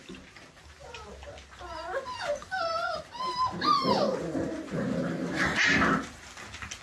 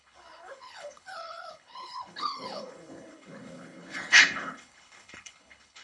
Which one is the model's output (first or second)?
second